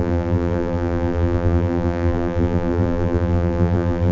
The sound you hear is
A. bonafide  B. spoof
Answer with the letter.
B